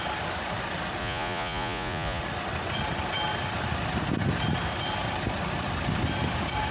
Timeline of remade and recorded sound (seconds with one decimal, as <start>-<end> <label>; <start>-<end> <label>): 0.0-1.0 recorded; 1.0-2.2 remade; 2.2-6.7 recorded